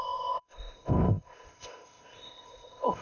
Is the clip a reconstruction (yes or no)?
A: yes